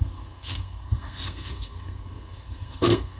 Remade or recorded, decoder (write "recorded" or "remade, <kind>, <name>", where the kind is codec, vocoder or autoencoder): remade, codec, SNAC